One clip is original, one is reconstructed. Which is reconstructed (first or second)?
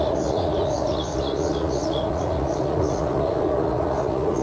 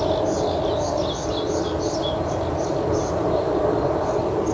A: first